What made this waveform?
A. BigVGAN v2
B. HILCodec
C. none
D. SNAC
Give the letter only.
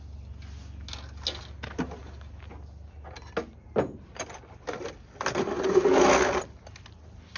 C